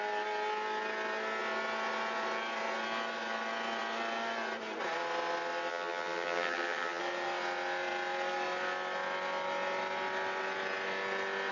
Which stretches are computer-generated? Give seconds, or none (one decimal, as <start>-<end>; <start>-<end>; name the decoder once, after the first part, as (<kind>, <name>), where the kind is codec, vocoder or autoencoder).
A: 5.7-7.0 (vocoder, HiFi-GAN)